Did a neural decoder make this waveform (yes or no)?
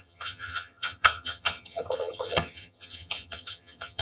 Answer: yes